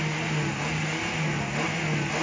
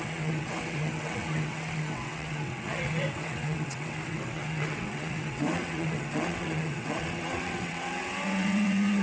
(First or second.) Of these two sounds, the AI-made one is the second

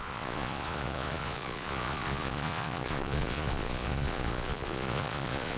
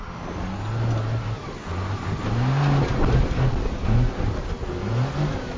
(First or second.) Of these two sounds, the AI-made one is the first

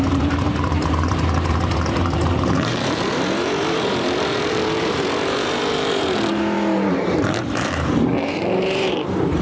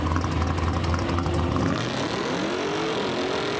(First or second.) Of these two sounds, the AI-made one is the first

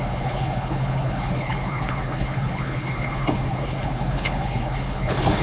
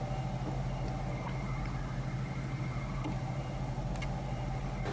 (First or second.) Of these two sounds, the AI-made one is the first